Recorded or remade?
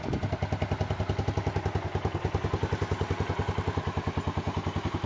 recorded